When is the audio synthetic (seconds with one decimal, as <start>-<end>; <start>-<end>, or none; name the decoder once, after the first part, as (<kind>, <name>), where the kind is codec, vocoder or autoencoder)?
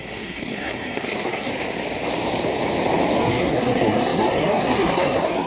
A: 0.0-1.5 (codec, SNAC); 3.2-5.5